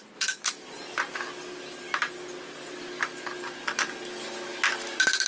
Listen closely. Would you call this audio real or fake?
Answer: real